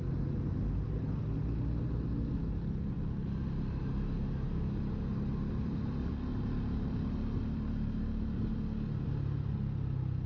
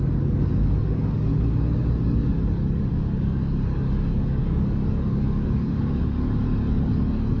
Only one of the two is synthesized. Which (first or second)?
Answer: second